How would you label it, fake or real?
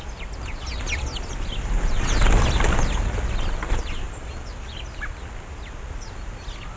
real